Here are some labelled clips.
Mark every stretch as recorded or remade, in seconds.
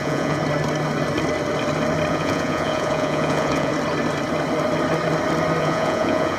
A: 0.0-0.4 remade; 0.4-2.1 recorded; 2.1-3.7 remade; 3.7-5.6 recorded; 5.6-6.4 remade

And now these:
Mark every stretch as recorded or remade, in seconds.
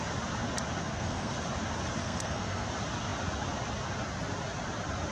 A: 0.0-0.8 recorded; 0.8-1.3 remade; 1.3-2.0 recorded; 2.0-2.7 remade; 2.7-5.1 recorded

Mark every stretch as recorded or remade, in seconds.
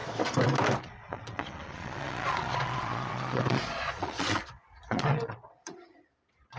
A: 0.0-0.8 recorded; 0.8-6.6 remade